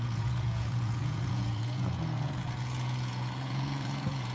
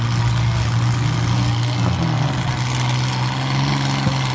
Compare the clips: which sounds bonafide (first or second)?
second